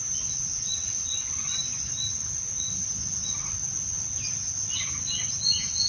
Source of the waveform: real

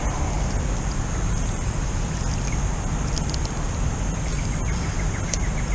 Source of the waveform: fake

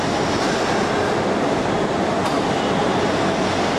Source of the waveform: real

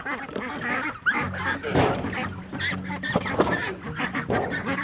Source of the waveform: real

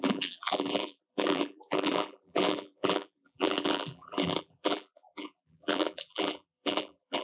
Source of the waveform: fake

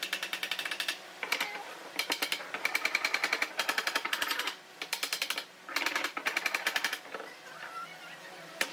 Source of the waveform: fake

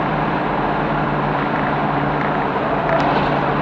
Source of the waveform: fake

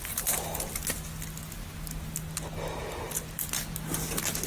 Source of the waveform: real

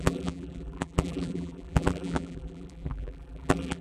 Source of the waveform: fake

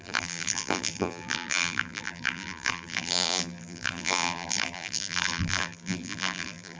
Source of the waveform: fake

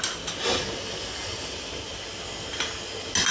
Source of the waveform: real